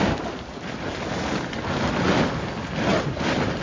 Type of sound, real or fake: real